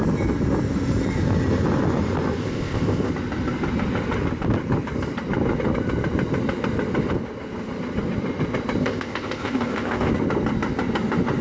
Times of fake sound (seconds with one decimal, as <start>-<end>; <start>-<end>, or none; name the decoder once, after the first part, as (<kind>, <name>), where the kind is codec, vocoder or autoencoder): 2.4-3.1 (codec, ZipCodec); 8.8-10.1

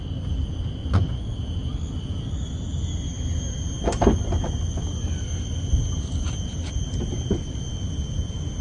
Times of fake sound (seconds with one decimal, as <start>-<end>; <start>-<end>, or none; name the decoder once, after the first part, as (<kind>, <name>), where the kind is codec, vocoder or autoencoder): 0.8-1.4 (vocoder, Vocos)

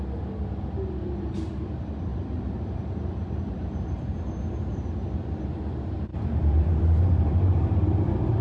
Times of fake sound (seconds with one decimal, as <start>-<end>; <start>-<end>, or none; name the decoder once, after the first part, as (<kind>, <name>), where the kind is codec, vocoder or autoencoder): 2.1-4.3 (vocoder, BigVGAN v2); 6.1-7.7